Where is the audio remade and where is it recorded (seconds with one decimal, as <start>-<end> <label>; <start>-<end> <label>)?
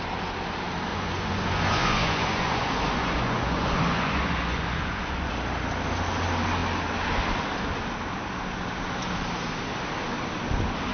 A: 0.0-0.9 recorded; 0.9-5.3 remade; 5.3-10.9 recorded